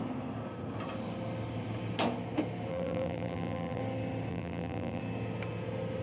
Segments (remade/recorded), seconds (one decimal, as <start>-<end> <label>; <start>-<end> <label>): 0.0-2.7 recorded; 2.7-3.8 remade; 3.8-4.3 recorded; 4.3-5.0 remade; 5.0-6.0 recorded